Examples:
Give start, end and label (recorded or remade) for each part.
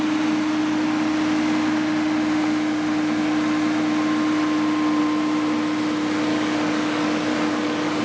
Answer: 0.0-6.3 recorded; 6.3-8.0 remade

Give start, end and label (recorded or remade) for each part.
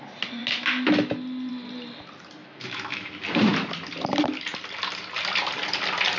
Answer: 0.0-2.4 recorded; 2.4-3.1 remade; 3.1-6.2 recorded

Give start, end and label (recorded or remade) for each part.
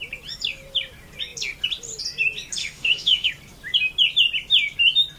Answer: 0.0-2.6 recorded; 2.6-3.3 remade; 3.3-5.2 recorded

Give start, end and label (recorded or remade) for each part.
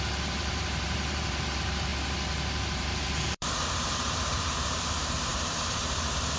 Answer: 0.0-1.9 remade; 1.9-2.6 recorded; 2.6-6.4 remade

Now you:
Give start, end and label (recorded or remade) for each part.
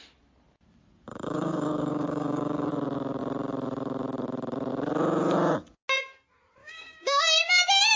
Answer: 0.0-1.1 recorded; 1.1-2.7 remade; 2.7-6.6 recorded; 6.6-7.2 remade; 7.2-8.0 recorded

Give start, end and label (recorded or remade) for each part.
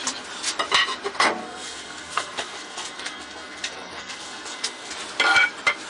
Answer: 0.0-1.4 recorded; 1.4-4.9 remade; 4.9-5.9 recorded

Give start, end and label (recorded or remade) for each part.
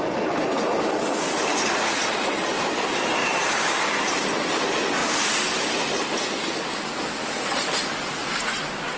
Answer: 0.0-3.2 recorded; 3.2-3.9 remade; 3.9-5.0 recorded; 5.0-5.8 remade; 5.8-9.0 recorded